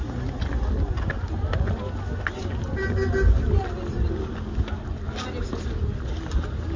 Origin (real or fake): real